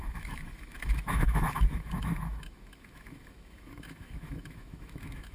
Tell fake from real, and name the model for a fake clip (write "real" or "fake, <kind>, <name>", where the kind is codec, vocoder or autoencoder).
fake, autoencoder, DAC-VAE